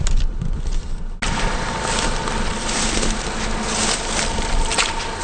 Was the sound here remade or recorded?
recorded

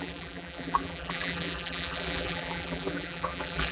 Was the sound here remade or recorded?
remade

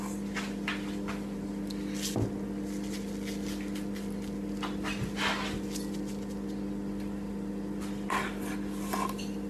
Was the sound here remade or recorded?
recorded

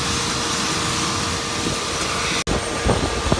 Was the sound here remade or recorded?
recorded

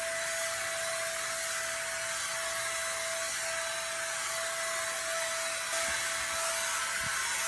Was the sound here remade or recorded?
recorded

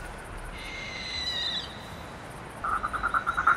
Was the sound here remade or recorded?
recorded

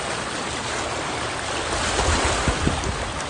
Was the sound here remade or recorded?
recorded